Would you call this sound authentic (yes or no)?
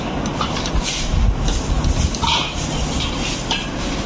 yes